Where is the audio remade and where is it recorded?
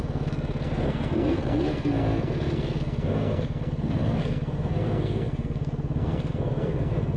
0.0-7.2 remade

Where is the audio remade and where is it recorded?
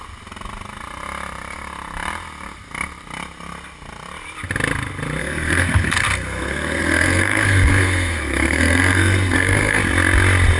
0.0-5.2 recorded; 5.2-9.8 remade; 9.8-10.6 recorded